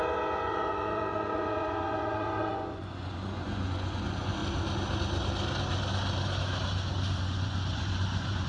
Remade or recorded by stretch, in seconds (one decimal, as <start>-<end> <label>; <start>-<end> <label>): 0.0-4.4 remade; 4.4-7.2 recorded; 7.2-8.5 remade